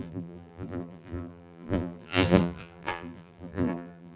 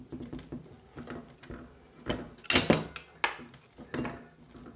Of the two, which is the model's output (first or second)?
first